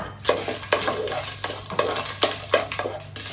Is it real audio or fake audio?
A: real